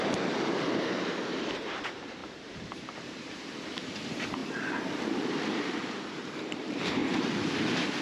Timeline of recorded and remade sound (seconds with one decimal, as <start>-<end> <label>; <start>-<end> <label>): 0.0-7.0 remade; 7.0-8.0 recorded